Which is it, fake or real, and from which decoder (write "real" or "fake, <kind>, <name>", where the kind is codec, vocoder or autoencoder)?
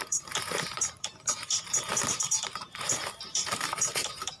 fake, vocoder, BigVGAN v2